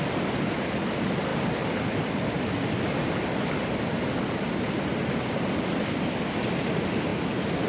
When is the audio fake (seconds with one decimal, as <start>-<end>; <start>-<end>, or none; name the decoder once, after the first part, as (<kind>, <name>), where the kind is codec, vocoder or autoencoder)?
none